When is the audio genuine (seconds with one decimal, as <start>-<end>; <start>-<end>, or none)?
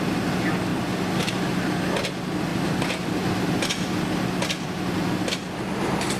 0.0-6.2